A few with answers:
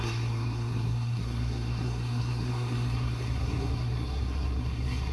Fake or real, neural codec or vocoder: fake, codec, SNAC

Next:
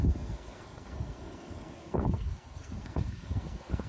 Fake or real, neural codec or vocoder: fake, codec, SNAC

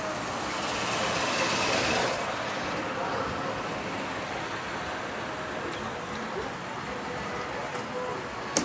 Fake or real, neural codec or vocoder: real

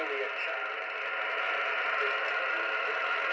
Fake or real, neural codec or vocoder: real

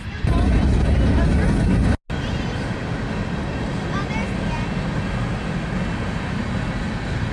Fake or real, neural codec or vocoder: real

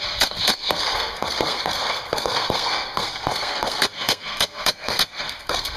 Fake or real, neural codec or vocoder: fake, codec, SNAC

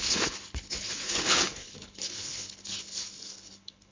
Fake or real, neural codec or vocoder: fake, codec, HILCodec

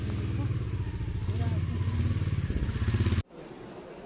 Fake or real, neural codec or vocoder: real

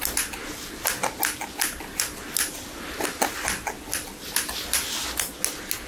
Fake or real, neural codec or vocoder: real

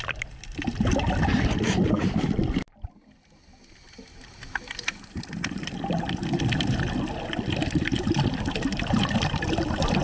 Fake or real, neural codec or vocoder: real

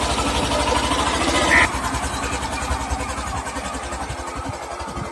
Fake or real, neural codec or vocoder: real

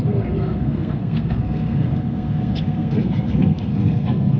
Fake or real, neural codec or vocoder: fake, codec, SNAC